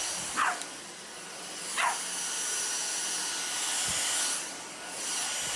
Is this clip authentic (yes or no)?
yes